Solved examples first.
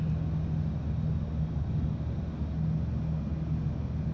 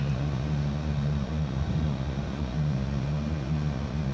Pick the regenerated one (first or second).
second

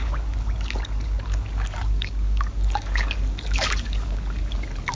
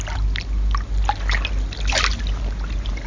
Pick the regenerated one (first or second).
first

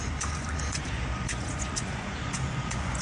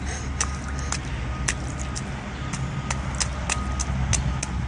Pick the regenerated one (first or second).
first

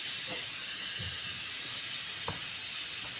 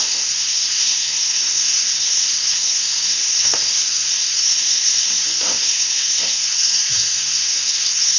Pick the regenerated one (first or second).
second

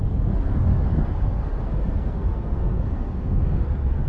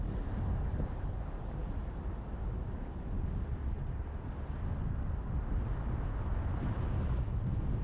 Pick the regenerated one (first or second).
first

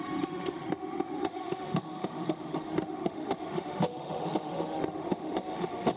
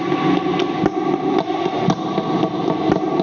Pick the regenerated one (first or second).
first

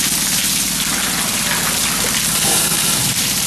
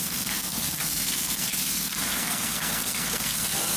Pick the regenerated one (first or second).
second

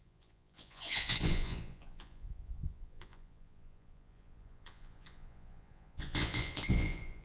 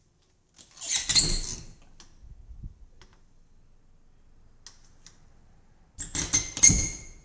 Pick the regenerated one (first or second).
first